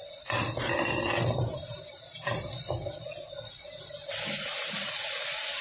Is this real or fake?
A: real